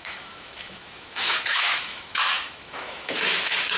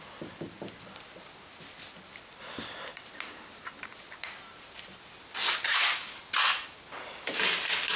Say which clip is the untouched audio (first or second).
second